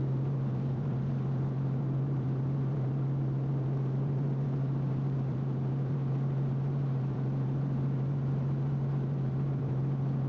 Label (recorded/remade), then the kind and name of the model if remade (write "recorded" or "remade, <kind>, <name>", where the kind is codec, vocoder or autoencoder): remade, vocoder, BigVGAN v2